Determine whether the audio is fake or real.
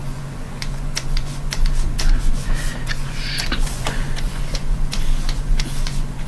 fake